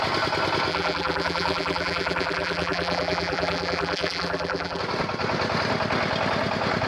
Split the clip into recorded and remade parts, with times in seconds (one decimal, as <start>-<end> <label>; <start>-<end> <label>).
0.0-0.7 recorded; 0.7-4.8 remade; 4.8-6.9 recorded